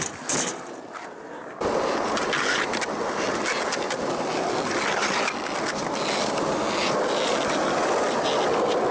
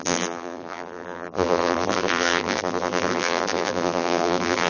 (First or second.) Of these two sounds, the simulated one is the second